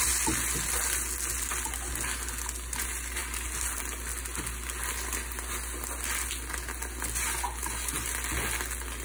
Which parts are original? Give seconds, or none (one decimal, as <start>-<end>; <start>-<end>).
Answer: 0.0-9.0